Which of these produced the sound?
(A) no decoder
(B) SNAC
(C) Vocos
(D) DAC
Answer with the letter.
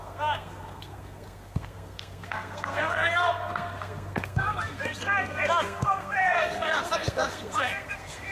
B